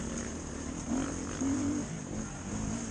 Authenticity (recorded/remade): recorded